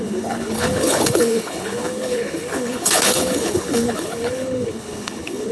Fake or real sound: fake